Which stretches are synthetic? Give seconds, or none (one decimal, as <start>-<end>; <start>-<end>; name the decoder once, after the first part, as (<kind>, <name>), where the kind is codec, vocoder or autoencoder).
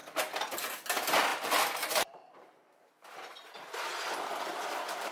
1.3-2.9 (vocoder, BigVGAN v2)